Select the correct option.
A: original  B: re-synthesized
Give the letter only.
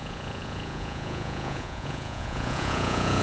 B